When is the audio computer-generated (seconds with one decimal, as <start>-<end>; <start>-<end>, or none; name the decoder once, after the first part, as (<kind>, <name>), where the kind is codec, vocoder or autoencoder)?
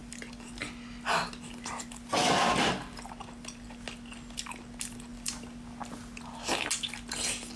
none